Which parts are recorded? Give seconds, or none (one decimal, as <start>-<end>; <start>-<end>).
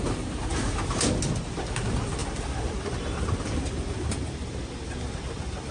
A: 0.0-5.7